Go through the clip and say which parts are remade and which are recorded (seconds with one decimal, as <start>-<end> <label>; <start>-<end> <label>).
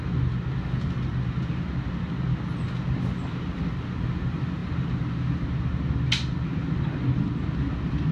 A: 0.0-8.1 recorded